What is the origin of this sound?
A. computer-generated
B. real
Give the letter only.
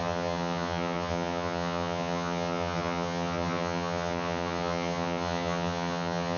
A